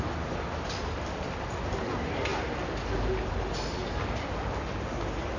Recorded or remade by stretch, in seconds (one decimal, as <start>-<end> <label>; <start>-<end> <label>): 0.0-0.8 recorded; 0.8-1.9 remade; 1.9-5.4 recorded